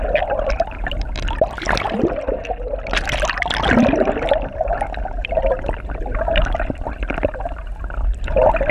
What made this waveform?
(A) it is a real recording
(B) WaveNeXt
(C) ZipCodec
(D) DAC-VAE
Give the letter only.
A